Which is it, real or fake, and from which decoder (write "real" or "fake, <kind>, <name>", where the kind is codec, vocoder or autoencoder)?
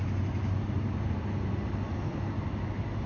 real